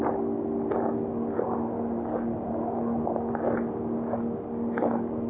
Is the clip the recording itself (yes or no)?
yes